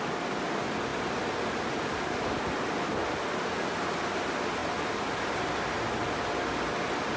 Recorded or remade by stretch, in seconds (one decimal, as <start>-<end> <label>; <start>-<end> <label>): 0.0-4.6 recorded; 4.6-5.2 remade; 5.2-7.2 recorded